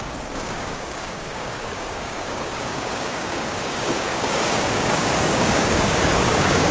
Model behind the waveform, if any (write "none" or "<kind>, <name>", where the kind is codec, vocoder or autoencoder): codec, DAC